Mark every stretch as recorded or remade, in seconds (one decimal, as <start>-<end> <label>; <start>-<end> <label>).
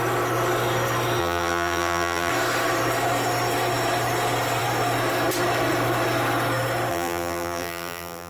0.0-1.2 recorded; 1.2-2.3 remade; 2.3-6.9 recorded; 6.9-8.3 remade